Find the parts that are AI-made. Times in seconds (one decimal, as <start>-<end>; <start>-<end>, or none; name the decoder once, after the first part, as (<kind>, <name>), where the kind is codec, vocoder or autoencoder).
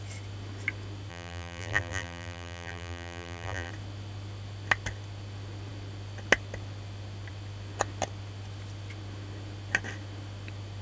1.1-3.7 (vocoder, BigVGAN v2)